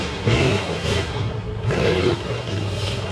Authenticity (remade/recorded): remade